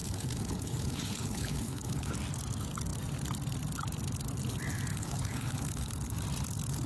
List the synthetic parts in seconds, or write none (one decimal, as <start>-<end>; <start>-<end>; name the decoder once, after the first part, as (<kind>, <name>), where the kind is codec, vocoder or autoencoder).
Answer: 0.0-2.1 (codec, HILCodec); 4.9-5.9